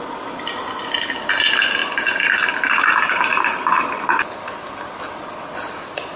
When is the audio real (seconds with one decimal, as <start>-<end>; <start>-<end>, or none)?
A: 0.0-6.2